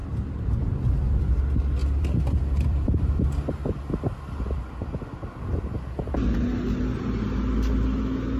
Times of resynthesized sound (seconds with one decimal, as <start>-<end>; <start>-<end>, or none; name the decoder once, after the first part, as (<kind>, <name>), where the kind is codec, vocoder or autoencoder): 0.0-1.4 (vocoder, BigVGAN v2); 1.8-4.7